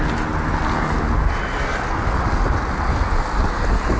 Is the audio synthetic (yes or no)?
no